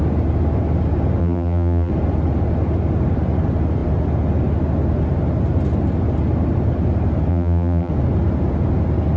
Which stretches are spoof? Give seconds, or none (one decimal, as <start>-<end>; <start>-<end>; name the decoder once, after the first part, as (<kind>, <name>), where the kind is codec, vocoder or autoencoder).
1.2-1.9 (vocoder, BigVGAN v2); 7.3-7.9